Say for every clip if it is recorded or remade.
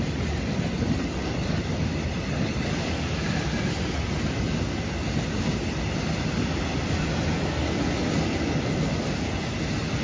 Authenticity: recorded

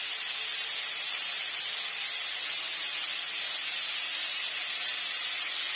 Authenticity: recorded